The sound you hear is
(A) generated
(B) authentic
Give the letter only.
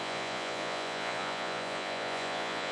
A